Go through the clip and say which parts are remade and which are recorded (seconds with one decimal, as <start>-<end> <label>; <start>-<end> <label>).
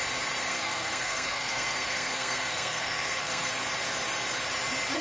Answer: 0.0-0.5 recorded; 0.5-3.5 remade; 3.5-5.0 recorded